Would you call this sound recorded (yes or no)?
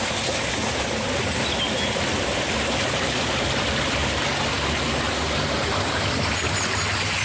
yes